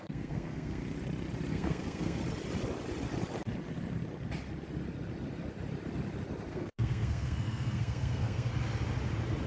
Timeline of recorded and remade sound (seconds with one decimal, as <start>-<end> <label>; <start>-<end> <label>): 0.0-0.8 remade; 0.8-1.5 recorded; 1.5-2.2 remade; 2.2-6.5 recorded; 6.5-8.5 remade; 8.5-9.5 recorded